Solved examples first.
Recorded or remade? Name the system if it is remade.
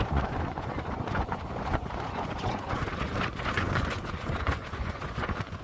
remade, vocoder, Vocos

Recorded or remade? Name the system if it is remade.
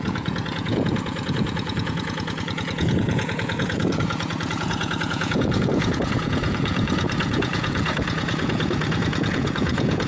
remade, vocoder, Vocos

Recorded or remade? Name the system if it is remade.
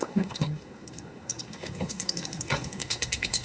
remade, codec, SNAC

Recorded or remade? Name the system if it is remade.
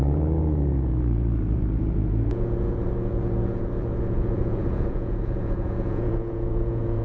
remade, vocoder, Vocos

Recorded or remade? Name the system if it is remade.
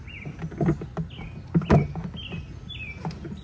recorded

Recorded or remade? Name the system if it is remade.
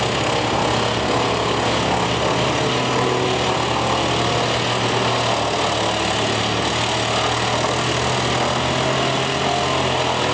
recorded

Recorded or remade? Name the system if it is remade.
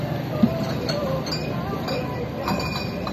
recorded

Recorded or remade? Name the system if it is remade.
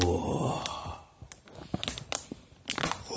recorded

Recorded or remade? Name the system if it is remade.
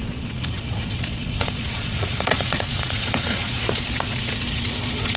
remade, vocoder, Vocos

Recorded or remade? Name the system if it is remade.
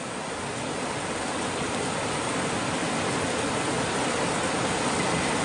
recorded